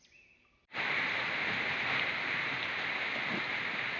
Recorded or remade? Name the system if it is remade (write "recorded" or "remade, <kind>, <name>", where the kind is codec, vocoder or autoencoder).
recorded